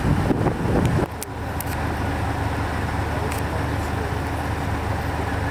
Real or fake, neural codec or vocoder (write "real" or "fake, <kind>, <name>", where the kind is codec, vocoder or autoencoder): real